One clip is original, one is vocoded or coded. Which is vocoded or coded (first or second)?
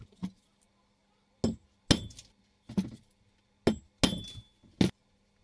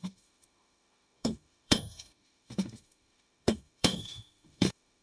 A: second